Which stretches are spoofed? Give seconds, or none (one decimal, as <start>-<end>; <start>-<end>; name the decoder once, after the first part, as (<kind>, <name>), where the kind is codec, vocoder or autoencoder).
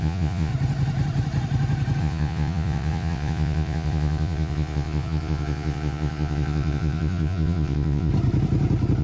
0.0-0.5 (vocoder, Vocos); 2.0-8.1